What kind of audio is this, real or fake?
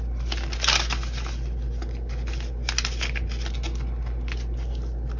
real